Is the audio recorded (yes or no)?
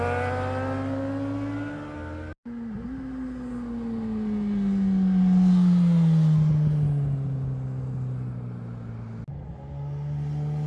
yes